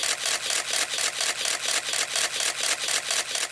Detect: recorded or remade recorded